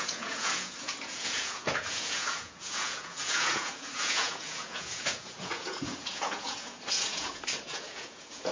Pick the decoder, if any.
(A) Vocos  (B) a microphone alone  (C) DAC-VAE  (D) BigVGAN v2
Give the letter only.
A